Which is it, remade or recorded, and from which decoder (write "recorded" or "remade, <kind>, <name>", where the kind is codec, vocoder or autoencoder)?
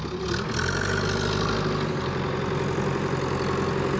recorded